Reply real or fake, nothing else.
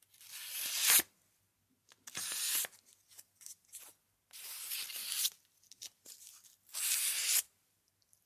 real